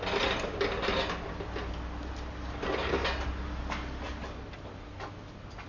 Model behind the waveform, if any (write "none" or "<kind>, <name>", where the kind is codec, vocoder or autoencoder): none